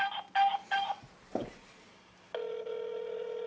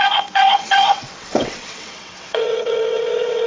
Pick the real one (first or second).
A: first